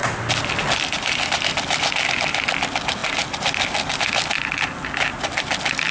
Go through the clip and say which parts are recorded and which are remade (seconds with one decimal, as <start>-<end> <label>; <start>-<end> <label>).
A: 0.0-0.7 recorded; 0.7-5.9 remade